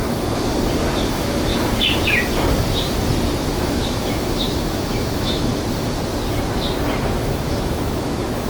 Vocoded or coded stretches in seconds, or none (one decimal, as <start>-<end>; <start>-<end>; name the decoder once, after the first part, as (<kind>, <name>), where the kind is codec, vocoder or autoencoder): 0.0-0.5 (autoencoder, DAC-VAE); 1.1-1.5; 3.6-5.5; 7.1-8.5